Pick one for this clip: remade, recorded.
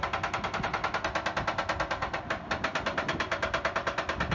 recorded